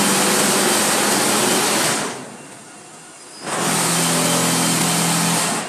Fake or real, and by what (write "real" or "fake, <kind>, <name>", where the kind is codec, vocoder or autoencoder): real